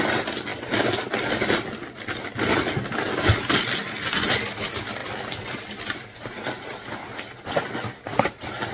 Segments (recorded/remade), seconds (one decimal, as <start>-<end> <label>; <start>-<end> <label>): 0.0-8.7 recorded